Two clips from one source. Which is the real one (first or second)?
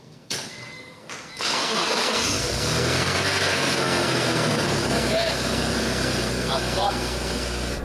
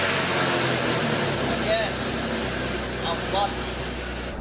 second